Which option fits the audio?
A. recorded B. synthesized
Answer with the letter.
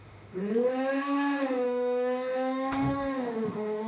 B